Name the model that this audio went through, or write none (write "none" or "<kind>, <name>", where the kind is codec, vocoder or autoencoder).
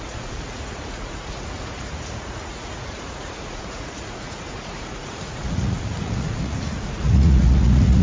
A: vocoder, Vocos